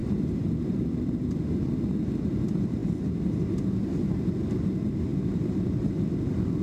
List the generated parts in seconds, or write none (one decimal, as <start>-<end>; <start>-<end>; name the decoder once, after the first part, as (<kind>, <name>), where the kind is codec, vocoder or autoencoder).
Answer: 0.0-1.4 (vocoder, BigVGAN v2); 2.8-4.4; 5.1-5.8